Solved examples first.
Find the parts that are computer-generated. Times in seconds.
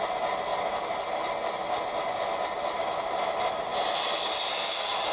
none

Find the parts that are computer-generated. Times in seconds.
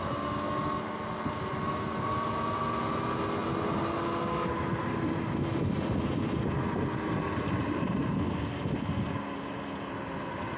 none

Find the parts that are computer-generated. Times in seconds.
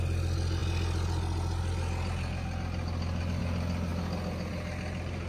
none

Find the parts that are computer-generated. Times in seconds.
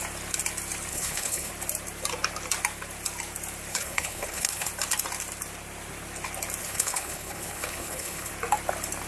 0.9-1.5 (codec, HILCodec); 3.7-4.7; 6.6-8.3